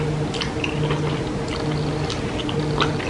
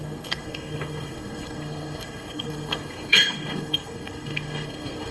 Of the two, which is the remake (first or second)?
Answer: second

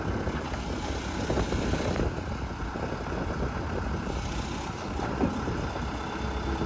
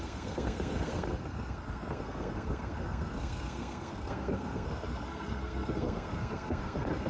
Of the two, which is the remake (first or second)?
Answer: second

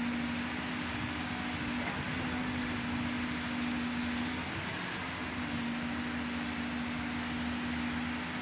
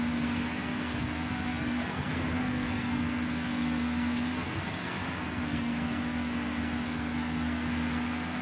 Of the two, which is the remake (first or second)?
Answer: second